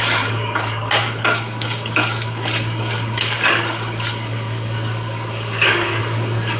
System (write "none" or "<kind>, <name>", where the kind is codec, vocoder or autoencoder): codec, DAC